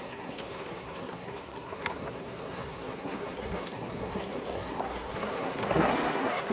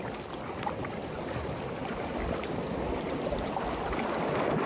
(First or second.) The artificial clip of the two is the first